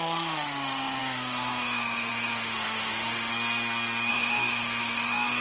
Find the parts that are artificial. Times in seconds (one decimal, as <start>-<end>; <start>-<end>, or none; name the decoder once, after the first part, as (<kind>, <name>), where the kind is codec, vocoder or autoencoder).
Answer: 0.0-3.3 (autoencoder, DAC-VAE); 4.1-5.4